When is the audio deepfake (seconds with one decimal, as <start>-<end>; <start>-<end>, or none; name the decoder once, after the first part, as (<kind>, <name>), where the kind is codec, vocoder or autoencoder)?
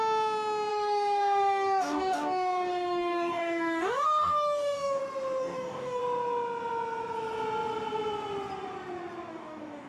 0.7-5.0 (codec, DAC); 5.4-6.0; 9.3-9.9